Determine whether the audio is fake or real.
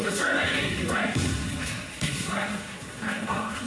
fake